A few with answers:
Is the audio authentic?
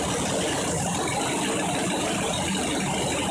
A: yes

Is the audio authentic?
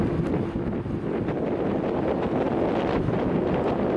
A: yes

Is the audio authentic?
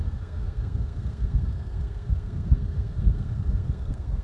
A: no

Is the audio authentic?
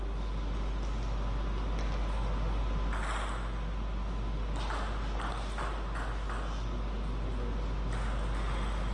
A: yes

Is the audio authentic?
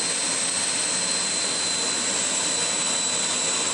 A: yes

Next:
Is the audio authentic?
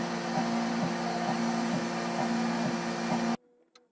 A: yes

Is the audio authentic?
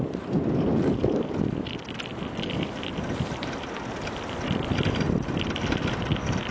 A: yes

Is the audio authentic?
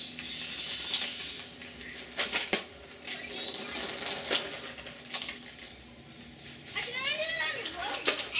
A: yes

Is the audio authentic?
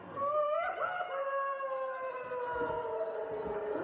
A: yes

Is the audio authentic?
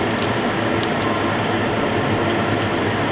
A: yes